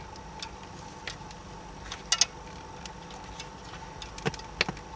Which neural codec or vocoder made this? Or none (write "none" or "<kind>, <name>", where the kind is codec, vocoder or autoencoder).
none